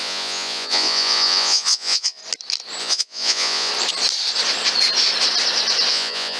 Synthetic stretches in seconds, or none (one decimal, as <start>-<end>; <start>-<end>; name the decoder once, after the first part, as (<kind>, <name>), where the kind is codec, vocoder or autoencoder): 0.0-2.2 (vocoder, Vocos); 2.8-3.7; 5.9-6.4